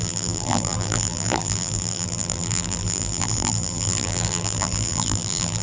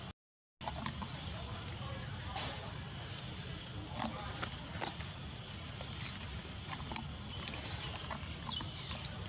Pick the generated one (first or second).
first